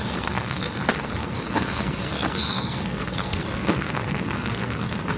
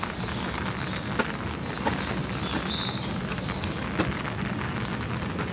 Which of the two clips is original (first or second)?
second